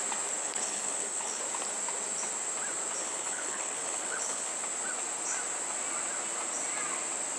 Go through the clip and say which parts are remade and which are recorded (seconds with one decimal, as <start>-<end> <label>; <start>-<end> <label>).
0.0-0.4 recorded; 0.4-1.4 remade; 1.4-3.0 recorded; 3.0-4.5 remade; 4.5-7.4 recorded